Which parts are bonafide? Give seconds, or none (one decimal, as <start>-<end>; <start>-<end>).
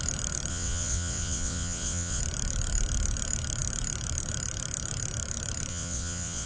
0.0-0.5; 2.2-5.7